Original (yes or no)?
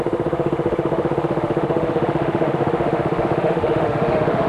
no